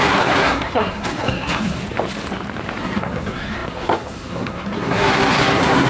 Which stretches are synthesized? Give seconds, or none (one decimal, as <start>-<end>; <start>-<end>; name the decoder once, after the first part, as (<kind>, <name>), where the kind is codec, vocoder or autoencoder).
0.0-1.8 (codec, SNAC); 2.8-5.9